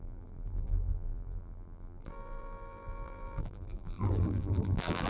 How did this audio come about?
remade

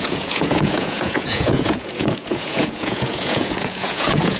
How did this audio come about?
remade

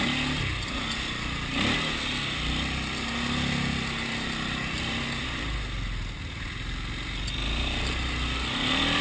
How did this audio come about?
recorded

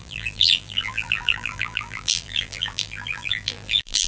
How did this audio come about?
remade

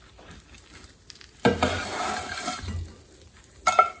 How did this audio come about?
recorded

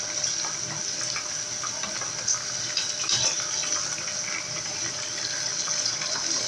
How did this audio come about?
recorded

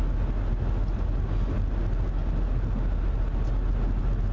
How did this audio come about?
recorded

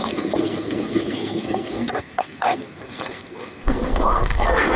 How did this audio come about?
remade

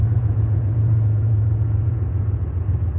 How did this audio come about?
remade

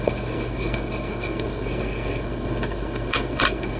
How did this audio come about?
remade